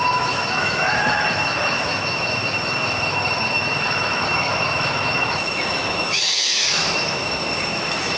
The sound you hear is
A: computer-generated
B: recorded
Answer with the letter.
A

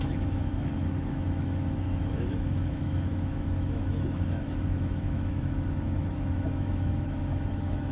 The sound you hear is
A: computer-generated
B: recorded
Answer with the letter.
A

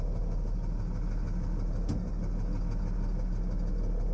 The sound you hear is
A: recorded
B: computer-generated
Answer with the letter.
A